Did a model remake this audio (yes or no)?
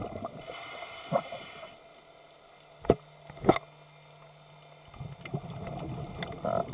no